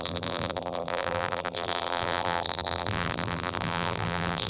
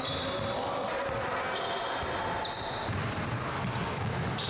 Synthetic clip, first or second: first